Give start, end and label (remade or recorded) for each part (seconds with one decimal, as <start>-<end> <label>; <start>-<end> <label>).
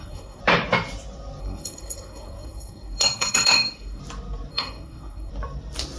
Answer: 0.0-0.4 remade; 0.4-1.4 recorded; 1.4-4.0 remade; 4.0-4.5 recorded; 4.5-5.3 remade; 5.3-6.0 recorded